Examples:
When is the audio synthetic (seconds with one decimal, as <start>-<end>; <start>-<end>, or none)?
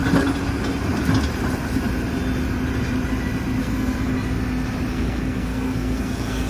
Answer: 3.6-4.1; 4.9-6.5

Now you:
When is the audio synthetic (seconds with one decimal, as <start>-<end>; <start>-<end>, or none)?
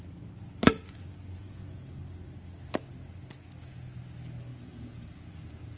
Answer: 1.4-2.0; 4.5-5.3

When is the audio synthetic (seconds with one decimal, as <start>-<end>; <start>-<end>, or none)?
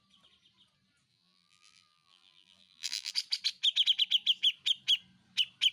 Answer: 1.1-3.1